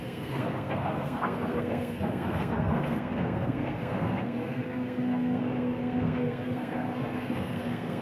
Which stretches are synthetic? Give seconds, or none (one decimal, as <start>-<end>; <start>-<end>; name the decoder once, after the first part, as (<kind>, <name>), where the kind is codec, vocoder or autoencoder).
0.0-8.0 (codec, SNAC)